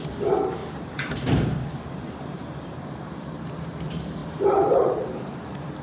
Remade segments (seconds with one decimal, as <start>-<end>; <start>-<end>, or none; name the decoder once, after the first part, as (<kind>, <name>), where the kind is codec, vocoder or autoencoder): 0.6-3.1 (vocoder, BigVGAN v2); 4.2-5.8